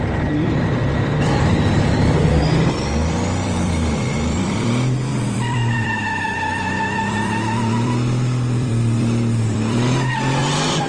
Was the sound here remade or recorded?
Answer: remade